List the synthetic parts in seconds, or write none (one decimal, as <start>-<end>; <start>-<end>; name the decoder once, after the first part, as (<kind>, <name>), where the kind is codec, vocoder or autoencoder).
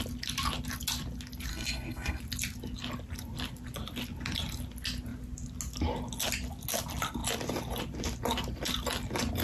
1.5-2.2 (codec, SNAC)